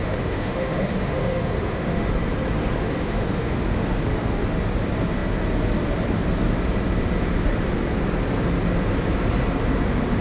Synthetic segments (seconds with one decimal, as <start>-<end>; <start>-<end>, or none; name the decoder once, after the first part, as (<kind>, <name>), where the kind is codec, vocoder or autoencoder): 0.0-2.1 (autoencoder, DAC-VAE); 2.6-4.1